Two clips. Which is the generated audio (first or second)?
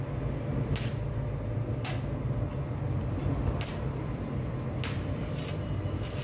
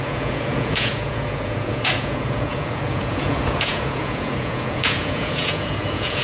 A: second